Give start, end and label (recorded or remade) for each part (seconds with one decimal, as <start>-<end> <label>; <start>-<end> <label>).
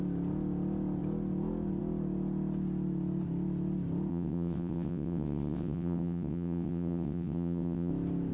0.0-4.1 recorded; 4.1-7.9 remade; 7.9-8.3 recorded